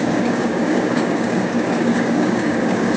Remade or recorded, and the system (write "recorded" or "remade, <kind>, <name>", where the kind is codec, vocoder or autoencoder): remade, codec, DAC